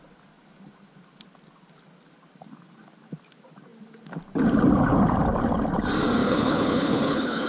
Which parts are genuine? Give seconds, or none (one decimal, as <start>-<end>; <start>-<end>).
0.0-6.2